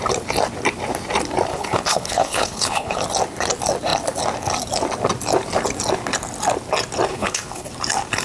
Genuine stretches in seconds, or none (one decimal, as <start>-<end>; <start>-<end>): 0.0-1.5; 3.0-7.1; 7.7-8.2